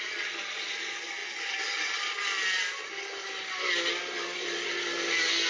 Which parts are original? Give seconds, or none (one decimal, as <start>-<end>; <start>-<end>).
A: 0.0-5.5